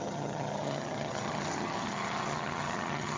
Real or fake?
fake